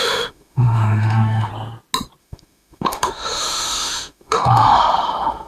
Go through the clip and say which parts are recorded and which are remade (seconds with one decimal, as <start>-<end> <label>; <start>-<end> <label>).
0.0-1.5 remade; 1.5-2.2 recorded; 2.2-5.5 remade